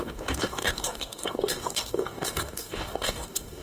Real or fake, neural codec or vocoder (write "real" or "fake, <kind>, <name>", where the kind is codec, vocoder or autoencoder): fake, codec, DAC